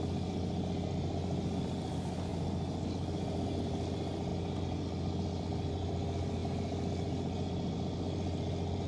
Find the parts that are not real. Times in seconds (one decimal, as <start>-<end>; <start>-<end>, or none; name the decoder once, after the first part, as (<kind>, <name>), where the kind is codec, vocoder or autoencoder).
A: none